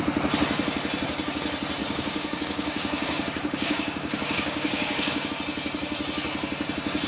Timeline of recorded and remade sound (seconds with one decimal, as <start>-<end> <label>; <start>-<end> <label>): 0.0-1.8 recorded; 1.8-5.3 remade; 5.3-7.1 recorded